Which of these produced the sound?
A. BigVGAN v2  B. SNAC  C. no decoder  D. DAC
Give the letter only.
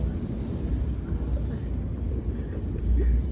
C